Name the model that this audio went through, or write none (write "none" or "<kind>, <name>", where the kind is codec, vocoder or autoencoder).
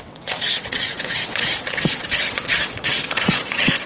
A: vocoder, WaveNeXt